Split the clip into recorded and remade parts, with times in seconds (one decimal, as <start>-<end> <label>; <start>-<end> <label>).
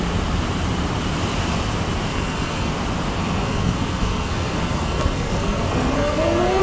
0.0-2.1 recorded; 2.1-2.7 remade; 2.7-3.2 recorded; 3.2-6.6 remade